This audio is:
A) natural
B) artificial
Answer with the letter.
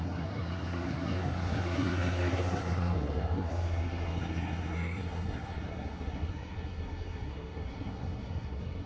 B